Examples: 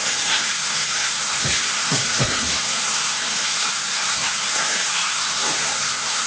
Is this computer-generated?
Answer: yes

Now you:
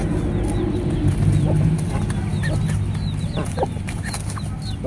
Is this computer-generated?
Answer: no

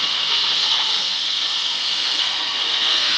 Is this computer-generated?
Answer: yes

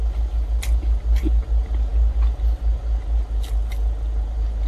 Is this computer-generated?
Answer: no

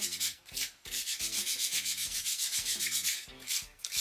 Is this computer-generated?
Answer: yes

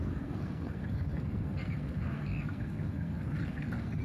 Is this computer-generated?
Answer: yes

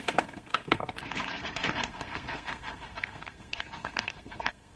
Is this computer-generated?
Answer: yes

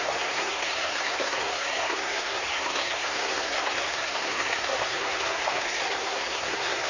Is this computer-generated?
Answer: yes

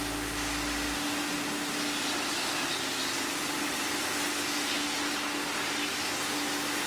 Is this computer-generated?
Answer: no